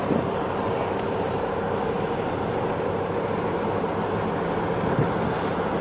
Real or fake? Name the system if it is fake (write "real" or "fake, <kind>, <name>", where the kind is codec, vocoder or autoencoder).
real